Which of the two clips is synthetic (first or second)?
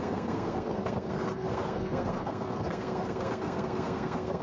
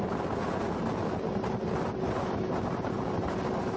first